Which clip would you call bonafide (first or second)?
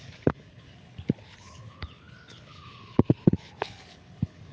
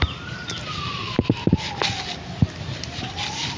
second